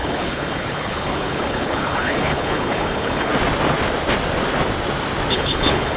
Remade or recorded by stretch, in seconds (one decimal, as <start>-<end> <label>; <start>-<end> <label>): 0.0-3.3 remade; 3.3-5.3 recorded; 5.3-6.0 remade